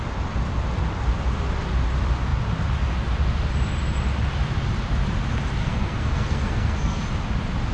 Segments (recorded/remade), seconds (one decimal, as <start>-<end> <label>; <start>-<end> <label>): 0.0-5.6 recorded; 5.6-7.0 remade; 7.0-7.7 recorded